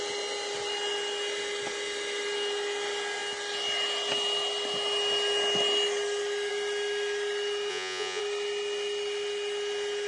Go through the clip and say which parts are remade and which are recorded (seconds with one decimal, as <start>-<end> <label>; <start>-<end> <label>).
0.0-7.7 recorded; 7.7-8.2 remade; 8.2-10.1 recorded